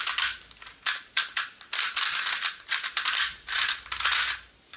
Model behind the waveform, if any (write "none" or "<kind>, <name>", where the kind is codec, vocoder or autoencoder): none